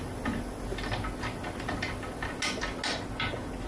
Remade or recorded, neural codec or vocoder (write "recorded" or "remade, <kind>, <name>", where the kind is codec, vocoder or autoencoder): recorded